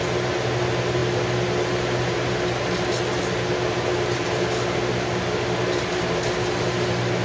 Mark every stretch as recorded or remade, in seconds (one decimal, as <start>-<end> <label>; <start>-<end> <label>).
0.0-7.2 recorded